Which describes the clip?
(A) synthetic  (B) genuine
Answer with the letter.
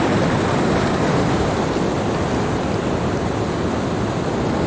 B